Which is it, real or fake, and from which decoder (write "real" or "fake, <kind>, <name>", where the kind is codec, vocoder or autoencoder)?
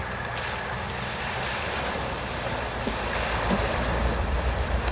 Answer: fake, vocoder, BigVGAN v2